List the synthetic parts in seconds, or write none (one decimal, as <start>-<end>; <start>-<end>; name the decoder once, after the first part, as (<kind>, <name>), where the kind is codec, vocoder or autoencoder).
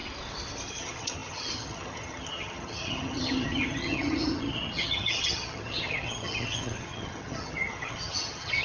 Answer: 0.7-8.6 (vocoder, HiFi-GAN)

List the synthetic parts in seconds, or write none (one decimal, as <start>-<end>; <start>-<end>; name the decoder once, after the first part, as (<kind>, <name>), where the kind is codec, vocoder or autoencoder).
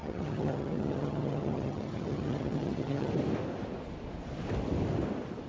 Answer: 0.0-3.1 (vocoder, HiFi-GAN)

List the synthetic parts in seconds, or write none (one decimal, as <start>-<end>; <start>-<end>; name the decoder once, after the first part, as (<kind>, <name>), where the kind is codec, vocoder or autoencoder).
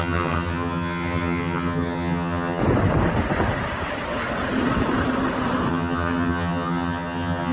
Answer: 0.0-2.6 (vocoder, HiFi-GAN); 5.7-7.5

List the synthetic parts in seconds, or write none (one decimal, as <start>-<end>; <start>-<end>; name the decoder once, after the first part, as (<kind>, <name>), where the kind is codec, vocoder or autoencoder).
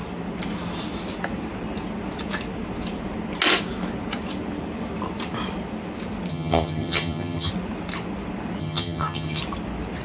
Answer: 6.3-7.5 (vocoder, HiFi-GAN); 8.6-9.4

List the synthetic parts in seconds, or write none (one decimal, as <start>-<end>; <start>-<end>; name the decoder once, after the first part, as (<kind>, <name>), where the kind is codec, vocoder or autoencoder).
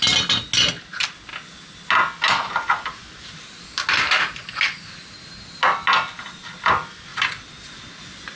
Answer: none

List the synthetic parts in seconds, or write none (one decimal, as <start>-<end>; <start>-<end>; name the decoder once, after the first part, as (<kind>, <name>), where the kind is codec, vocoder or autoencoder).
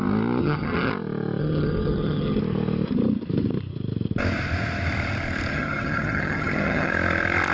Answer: 0.4-0.9 (vocoder, HiFi-GAN); 1.4-2.4; 5.5-6.9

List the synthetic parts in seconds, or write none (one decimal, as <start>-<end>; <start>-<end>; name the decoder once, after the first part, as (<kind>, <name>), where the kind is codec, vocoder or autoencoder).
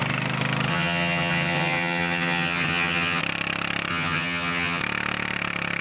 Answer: 0.7-3.2 (vocoder, HiFi-GAN); 3.9-4.8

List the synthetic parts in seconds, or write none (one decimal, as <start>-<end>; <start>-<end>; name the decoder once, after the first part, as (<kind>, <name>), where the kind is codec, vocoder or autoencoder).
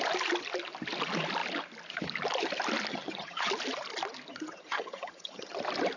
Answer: 2.9-3.5 (vocoder, HiFi-GAN); 4.3-5.5